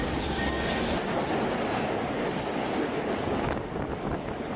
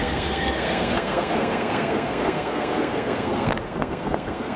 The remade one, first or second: second